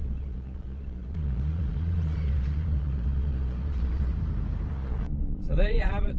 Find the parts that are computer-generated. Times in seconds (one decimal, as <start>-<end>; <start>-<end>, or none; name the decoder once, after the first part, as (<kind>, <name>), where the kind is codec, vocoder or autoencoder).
0.0-4.1 (vocoder, Vocos); 4.7-6.2